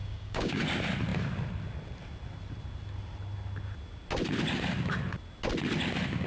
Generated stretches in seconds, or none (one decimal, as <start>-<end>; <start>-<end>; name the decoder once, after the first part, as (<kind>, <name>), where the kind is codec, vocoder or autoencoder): 0.0-0.6 (codec, DAC)